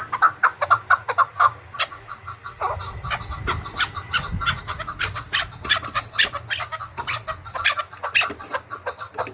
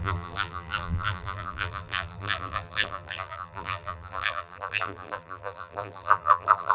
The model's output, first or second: second